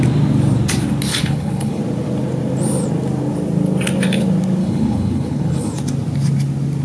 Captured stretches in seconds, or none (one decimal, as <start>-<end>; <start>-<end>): 0.0-1.1; 1.8-4.6; 5.7-6.8